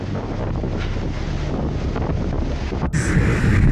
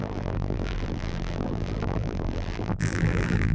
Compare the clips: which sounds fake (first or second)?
second